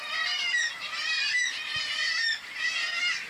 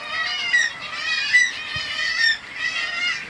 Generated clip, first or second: first